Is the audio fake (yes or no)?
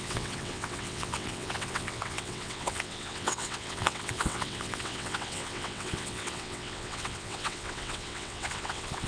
yes